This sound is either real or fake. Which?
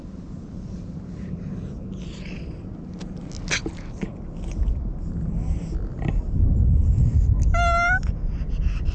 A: real